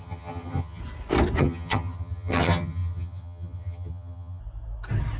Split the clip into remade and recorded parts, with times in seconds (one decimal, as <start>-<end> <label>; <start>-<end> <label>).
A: 0.0-0.8 remade; 0.8-1.4 recorded; 1.4-4.4 remade; 4.4-5.2 recorded